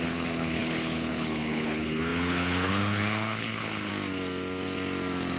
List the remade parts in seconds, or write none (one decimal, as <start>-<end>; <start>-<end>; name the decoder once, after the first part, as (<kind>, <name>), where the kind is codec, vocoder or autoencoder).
0.0-3.9 (codec, HILCodec)